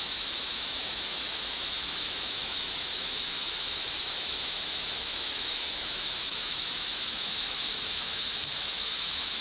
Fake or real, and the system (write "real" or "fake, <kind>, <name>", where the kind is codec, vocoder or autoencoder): fake, autoencoder, DAC-VAE